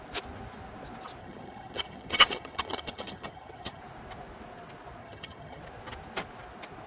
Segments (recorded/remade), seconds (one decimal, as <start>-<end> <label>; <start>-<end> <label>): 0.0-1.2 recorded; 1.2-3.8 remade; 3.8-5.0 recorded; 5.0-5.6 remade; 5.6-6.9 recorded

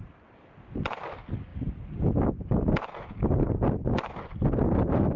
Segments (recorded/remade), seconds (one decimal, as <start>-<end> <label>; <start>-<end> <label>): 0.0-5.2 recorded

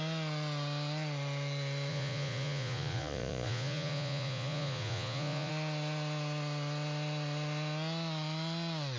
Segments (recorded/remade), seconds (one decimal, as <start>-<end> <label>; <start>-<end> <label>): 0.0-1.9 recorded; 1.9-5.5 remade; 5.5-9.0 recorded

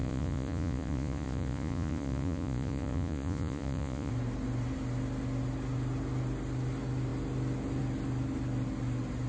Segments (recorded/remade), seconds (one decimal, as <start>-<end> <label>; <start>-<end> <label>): 0.0-4.1 remade; 4.1-9.3 recorded

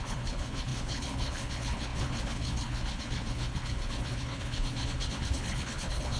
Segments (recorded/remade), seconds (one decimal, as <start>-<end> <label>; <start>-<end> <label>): 0.0-6.2 remade